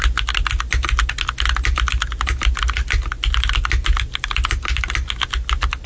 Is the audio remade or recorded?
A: recorded